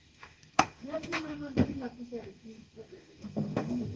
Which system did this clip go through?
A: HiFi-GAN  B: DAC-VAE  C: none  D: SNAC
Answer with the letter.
B